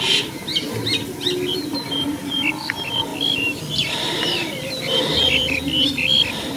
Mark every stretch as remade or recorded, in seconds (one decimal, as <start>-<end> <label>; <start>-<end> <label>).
0.0-0.5 remade; 0.5-1.5 recorded; 1.5-6.6 remade